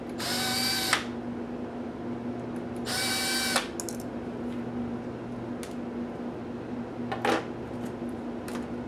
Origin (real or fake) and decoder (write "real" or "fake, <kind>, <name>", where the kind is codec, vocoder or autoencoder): real